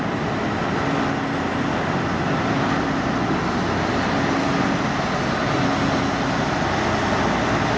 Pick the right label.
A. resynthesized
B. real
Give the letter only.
B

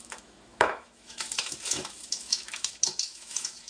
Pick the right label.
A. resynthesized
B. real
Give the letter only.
A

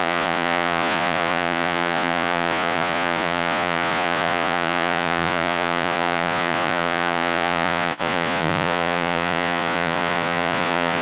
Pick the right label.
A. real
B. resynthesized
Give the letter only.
B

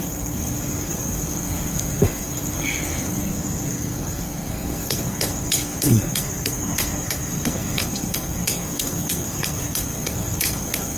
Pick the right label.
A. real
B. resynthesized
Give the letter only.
B